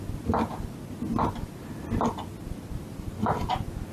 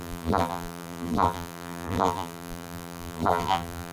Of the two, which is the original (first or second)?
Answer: first